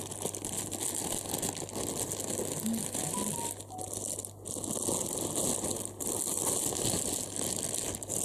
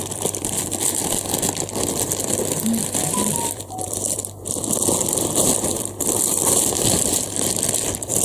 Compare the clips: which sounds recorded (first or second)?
first